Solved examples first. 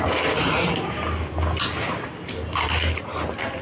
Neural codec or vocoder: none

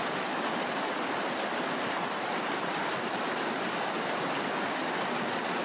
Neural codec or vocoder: none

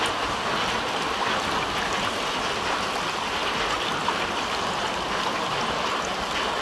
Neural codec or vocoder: none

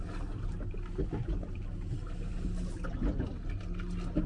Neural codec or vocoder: none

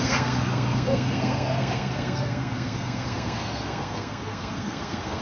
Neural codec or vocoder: codec, SNAC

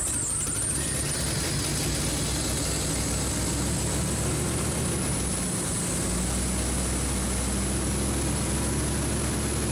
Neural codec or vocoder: none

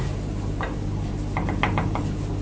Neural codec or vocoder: none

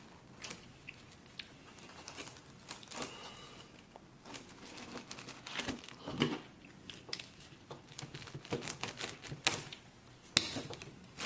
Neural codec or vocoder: none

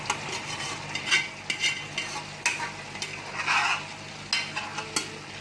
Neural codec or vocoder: none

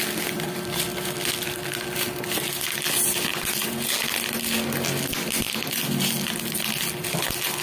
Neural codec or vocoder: none